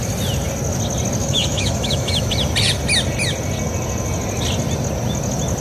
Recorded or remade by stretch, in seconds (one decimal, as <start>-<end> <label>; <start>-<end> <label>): 0.0-1.2 recorded; 1.2-2.3 remade; 2.3-5.6 recorded